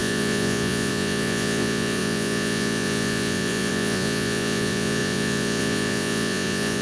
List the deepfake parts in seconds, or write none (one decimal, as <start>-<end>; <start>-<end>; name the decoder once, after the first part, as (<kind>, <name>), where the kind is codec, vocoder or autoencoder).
0.0-6.8 (vocoder, Vocos)